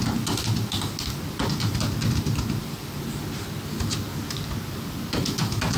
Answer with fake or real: real